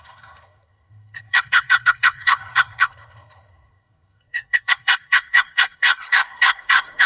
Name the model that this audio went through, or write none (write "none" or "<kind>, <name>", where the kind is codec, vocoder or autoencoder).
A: codec, SNAC